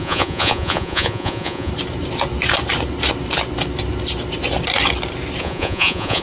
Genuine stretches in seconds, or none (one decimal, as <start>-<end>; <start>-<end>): 1.7-5.4